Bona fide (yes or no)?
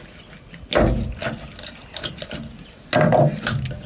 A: yes